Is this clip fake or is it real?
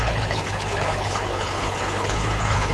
fake